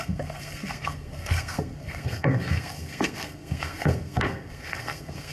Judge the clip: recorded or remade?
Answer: remade